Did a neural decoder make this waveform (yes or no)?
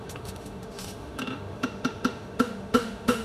yes